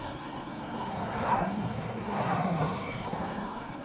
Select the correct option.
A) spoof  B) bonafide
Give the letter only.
A